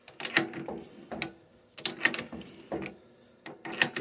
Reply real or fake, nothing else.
real